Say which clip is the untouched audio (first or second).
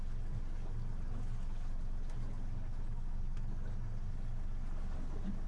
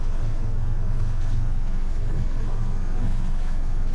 first